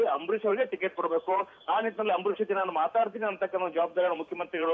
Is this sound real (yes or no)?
no